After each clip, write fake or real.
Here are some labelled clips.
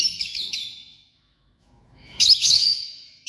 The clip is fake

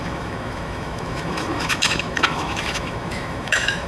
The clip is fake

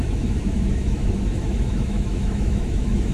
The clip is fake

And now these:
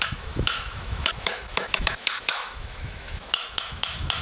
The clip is fake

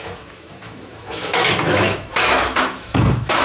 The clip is fake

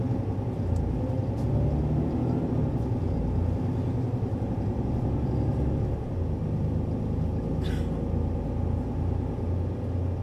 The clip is real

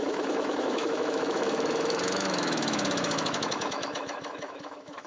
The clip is fake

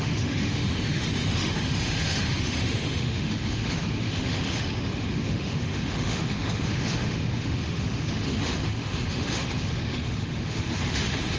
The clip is fake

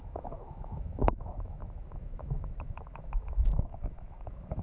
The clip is fake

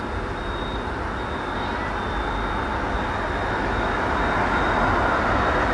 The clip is real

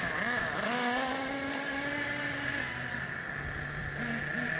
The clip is real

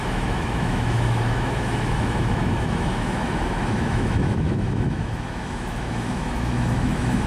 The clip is fake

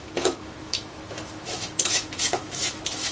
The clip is fake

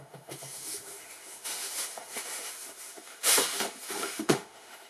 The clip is fake